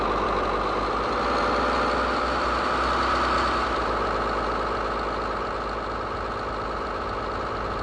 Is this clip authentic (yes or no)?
yes